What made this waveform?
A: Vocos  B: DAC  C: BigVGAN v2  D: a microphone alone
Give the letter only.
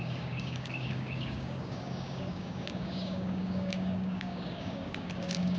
B